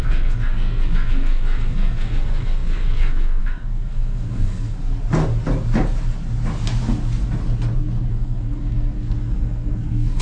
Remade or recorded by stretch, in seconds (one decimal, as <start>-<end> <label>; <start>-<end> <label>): 0.0-4.8 remade; 4.8-8.1 recorded; 8.1-10.2 remade